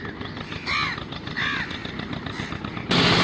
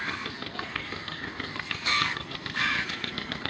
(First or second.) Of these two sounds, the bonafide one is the first